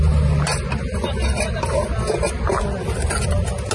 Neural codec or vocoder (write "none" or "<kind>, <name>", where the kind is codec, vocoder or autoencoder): none